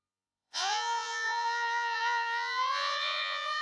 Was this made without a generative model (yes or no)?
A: no